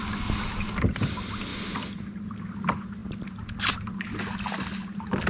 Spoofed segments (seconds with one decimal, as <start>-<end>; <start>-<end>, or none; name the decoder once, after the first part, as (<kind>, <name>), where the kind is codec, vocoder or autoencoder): none